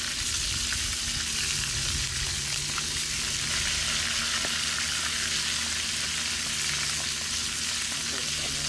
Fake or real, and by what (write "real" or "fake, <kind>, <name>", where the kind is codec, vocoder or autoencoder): real